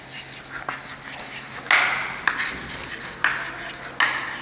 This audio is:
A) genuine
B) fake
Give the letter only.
A